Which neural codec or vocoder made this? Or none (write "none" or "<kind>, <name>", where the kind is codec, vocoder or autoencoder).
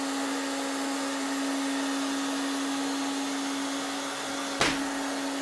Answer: none